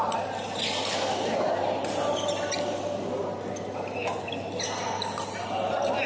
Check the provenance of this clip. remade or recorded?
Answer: recorded